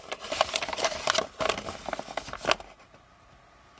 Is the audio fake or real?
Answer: real